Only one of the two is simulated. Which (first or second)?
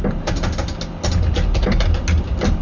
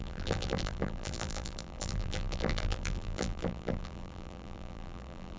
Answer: second